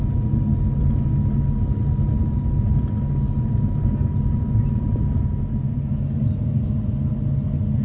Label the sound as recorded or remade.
recorded